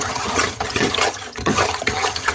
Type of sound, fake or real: fake